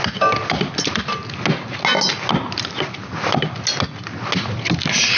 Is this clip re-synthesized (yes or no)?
no